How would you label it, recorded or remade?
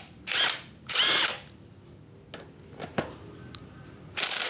recorded